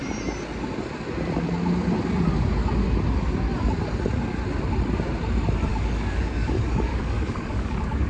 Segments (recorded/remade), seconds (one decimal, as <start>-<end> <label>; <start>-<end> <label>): 0.0-5.7 recorded; 5.7-8.1 remade